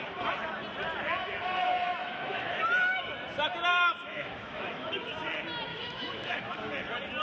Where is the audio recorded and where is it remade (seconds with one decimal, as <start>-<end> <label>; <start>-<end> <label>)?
0.0-2.0 recorded; 2.0-2.6 remade; 2.6-3.7 recorded; 3.7-5.0 remade; 5.0-5.7 recorded; 5.7-6.5 remade; 6.5-7.2 recorded